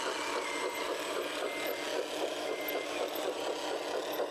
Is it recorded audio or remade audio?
recorded